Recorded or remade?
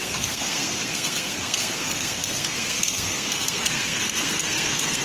remade